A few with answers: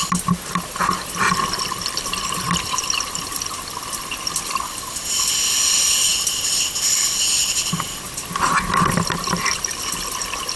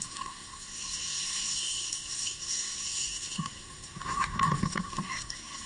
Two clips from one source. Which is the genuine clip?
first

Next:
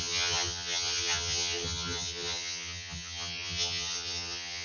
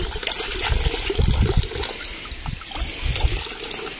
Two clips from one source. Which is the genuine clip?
second